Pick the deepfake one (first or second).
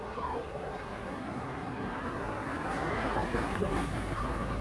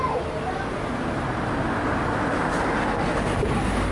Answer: first